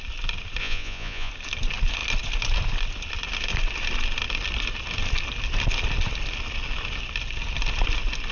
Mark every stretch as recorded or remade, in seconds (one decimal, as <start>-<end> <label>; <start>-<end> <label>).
0.0-0.6 recorded; 0.6-1.3 remade; 1.3-8.3 recorded